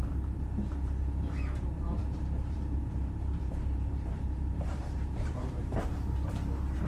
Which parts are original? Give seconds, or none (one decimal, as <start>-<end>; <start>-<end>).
none